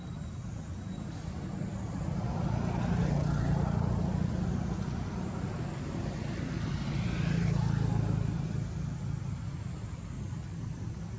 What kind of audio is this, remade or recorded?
recorded